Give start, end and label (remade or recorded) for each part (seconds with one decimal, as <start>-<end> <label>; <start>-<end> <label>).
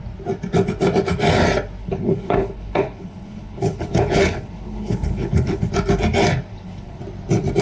0.0-1.8 recorded; 1.8-5.7 remade; 5.7-6.5 recorded; 6.5-7.0 remade; 7.0-7.6 recorded